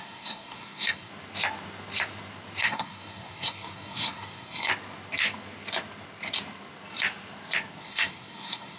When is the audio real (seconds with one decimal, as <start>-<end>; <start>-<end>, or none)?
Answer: 1.1-2.6; 4.7-7.8